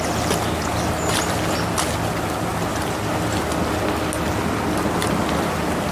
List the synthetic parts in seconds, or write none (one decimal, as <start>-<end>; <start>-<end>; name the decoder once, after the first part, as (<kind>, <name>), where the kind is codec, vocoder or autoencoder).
none